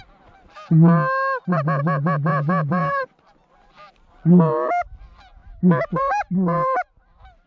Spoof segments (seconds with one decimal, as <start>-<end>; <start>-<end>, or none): 2.3-3.9; 5.4-7.5